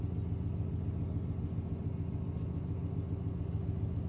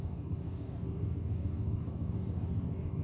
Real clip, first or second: first